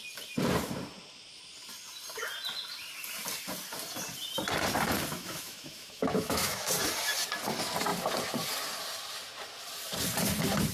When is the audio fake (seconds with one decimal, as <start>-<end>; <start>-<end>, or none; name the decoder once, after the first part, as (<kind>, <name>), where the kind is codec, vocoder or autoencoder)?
5.1-6.7 (autoencoder, DAC-VAE)